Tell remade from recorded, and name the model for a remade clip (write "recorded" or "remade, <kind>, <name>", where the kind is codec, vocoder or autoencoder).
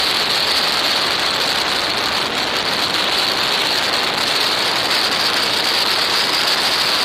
recorded